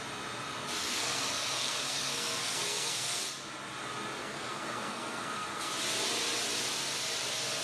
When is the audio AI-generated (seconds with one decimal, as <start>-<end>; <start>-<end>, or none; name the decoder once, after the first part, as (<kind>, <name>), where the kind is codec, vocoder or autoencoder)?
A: 0.8-3.2 (codec, SNAC); 4.2-5.7